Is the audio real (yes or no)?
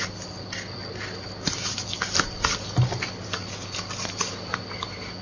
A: yes